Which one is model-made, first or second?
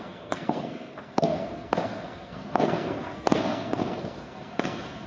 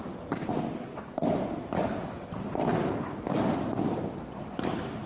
first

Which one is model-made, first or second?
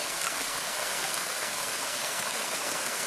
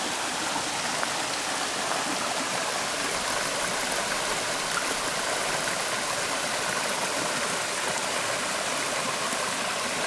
first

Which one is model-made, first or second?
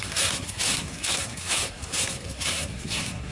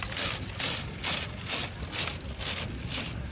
first